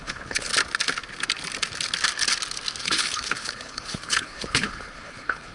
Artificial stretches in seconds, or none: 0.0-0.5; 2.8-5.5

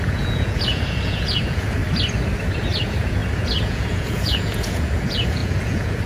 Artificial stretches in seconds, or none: 0.0-1.8; 2.8-6.1

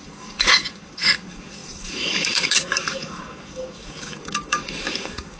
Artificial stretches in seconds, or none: 0.0-5.4

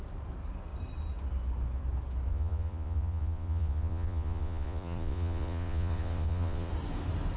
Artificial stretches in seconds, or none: 2.3-6.7

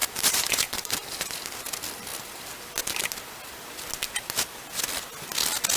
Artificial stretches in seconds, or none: 0.0-1.3

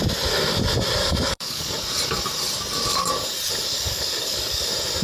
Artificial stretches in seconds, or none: 1.0-1.7; 3.6-4.6

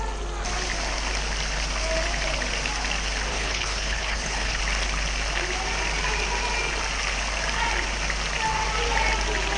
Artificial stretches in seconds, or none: 3.3-4.6